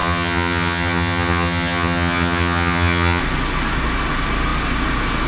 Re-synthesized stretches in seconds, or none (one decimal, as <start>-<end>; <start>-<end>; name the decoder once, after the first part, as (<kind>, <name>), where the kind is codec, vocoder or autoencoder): 0.0-3.2 (vocoder, HiFi-GAN)